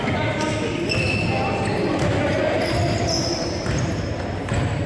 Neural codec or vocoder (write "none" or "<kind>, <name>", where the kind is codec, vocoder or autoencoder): none